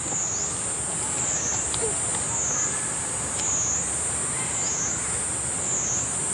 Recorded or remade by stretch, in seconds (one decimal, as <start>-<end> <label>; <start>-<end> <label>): 0.0-6.3 recorded